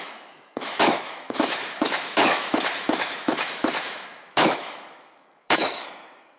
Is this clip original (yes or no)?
no